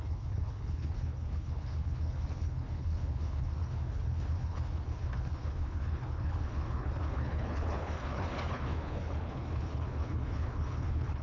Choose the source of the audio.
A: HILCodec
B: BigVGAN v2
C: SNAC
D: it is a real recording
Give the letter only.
A